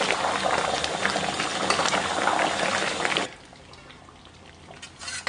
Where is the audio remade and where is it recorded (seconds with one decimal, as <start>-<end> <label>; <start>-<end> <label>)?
0.0-1.5 recorded; 1.5-4.7 remade; 4.7-5.3 recorded